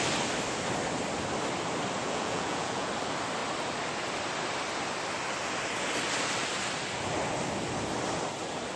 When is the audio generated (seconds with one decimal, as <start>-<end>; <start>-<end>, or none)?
2.0-2.9